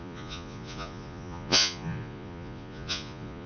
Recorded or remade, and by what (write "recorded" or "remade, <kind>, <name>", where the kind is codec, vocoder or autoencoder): remade, vocoder, Vocos